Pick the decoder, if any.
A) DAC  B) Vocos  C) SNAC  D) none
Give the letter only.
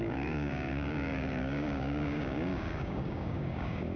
A